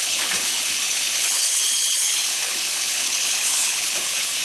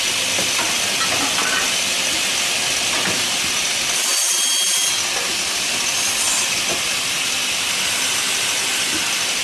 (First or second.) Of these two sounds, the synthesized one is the first